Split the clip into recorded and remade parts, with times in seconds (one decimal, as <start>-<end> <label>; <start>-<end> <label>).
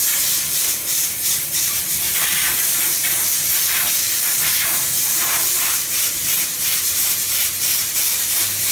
0.0-0.6 recorded; 0.6-8.7 remade